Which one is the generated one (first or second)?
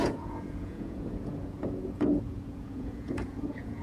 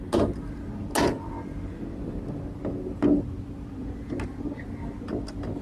first